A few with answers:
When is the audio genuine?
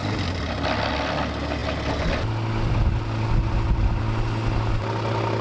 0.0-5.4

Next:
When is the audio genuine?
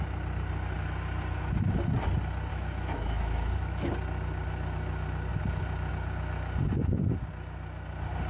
0.0-2.5; 3.9-8.3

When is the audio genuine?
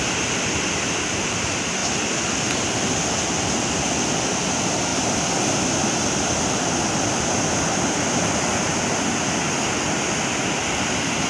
0.0-11.3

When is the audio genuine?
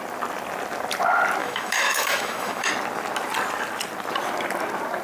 0.0-1.4; 2.7-5.0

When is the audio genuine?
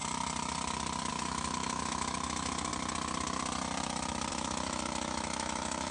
0.0-1.1; 2.7-4.3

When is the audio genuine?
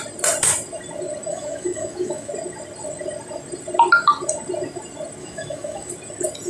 0.0-1.3; 2.3-5.2; 5.9-6.5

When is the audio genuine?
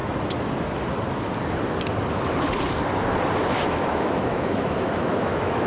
0.0-3.4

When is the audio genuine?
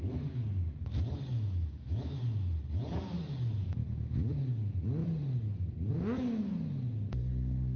0.0-1.3; 2.2-3.8; 4.3-7.8